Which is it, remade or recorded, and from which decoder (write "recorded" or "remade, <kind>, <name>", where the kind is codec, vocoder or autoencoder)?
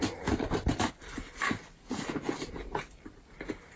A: recorded